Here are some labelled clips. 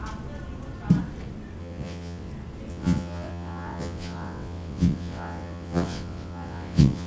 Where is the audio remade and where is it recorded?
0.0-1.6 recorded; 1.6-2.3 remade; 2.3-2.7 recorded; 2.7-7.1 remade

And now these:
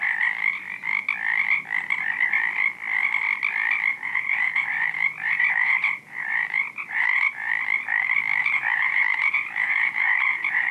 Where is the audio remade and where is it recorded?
0.0-3.9 recorded; 3.9-7.5 remade; 7.5-8.4 recorded; 8.4-10.7 remade

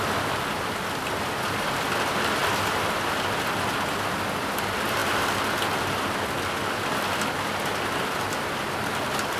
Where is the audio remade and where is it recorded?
0.0-9.4 recorded

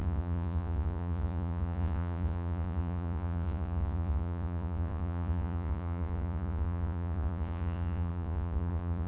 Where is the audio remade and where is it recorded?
0.0-9.1 remade

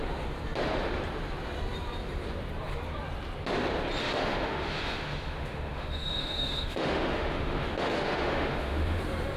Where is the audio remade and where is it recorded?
0.0-4.0 recorded; 4.0-9.0 remade; 9.0-9.4 recorded

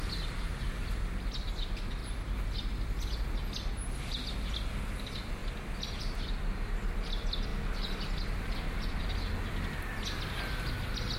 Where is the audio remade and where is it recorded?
0.0-11.2 recorded

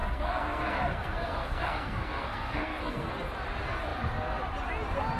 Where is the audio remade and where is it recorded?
0.0-3.1 remade; 3.1-5.2 recorded